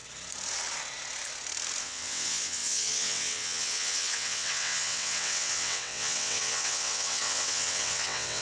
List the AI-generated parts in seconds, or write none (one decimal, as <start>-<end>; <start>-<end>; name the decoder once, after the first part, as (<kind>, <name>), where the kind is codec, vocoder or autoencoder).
1.8-8.4 (vocoder, WaveNeXt)